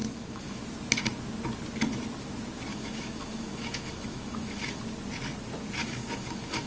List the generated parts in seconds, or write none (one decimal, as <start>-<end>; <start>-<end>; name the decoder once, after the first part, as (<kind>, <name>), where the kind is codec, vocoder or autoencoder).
0.0-0.6 (autoencoder, DAC-VAE); 2.7-4.8; 5.8-6.7